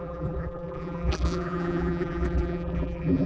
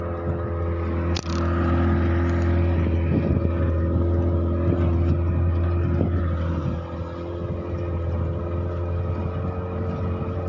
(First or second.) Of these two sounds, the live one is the second